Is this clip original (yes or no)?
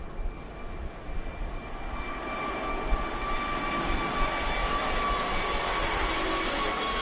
yes